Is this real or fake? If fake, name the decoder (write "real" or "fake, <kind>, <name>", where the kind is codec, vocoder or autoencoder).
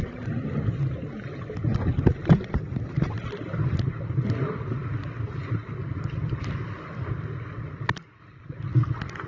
real